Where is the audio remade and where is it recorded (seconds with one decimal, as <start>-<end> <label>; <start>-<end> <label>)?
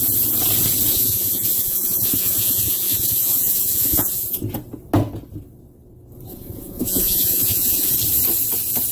0.0-0.9 recorded; 0.9-4.4 remade; 4.4-6.3 recorded; 6.3-7.9 remade; 7.9-8.9 recorded